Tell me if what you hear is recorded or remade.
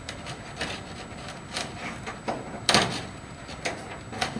recorded